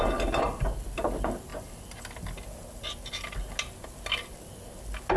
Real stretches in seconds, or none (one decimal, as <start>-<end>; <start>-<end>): 0.0-5.2